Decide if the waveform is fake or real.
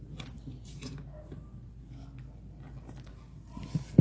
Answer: real